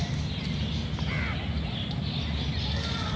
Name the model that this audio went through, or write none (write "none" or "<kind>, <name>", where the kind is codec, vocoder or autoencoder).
none